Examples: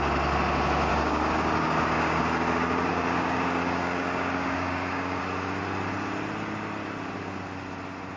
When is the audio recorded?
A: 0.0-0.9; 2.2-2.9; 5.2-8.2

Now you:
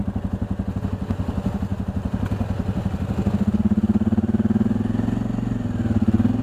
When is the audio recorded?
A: 0.0-6.4

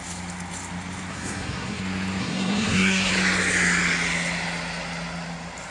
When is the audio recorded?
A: 0.0-1.1; 1.8-2.2; 3.1-5.7

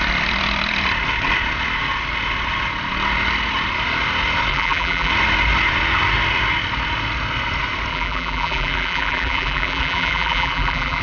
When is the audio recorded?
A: 0.0-4.5; 5.1-7.9

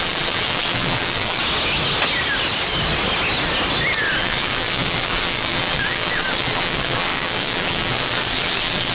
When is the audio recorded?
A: 1.4-4.2

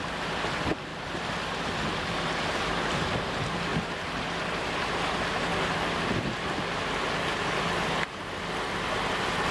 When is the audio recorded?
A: 0.0-0.9; 1.5-9.5

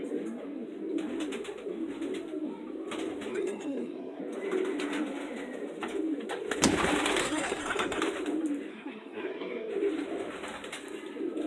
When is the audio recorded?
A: 0.0-3.3; 4.2-7.2; 8.0-8.7; 9.7-11.5